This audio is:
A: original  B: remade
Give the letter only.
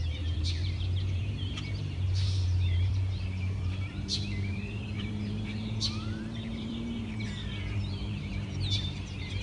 B